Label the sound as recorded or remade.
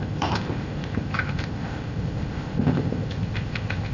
remade